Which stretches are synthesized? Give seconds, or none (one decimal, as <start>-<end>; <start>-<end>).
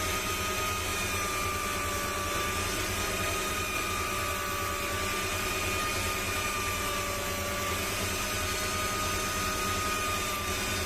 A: none